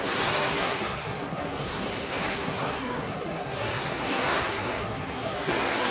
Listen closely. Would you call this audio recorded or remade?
remade